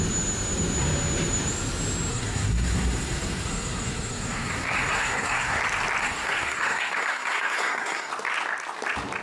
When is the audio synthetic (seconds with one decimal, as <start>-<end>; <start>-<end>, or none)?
2.1-5.6; 6.0-8.1